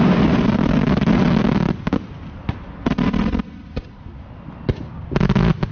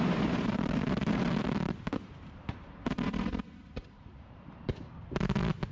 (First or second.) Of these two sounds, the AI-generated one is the second